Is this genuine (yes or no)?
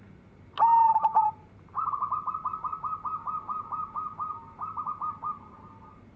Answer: yes